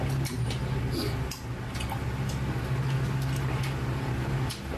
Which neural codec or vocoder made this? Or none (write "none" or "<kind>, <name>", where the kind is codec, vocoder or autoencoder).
none